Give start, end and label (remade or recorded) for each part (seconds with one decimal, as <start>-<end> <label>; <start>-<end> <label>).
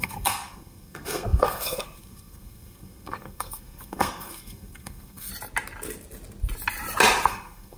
0.0-5.3 remade; 5.3-7.3 recorded; 7.3-7.8 remade